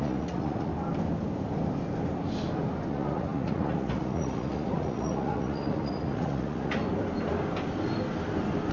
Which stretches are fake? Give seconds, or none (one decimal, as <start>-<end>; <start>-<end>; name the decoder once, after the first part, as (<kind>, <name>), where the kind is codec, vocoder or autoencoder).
0.0-0.7 (vocoder, Vocos); 2.9-6.8